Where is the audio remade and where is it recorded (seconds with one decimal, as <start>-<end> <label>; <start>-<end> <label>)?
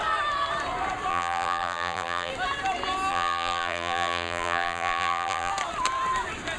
0.0-1.1 recorded; 1.1-2.3 remade; 2.3-3.1 recorded; 3.1-5.5 remade; 5.5-6.6 recorded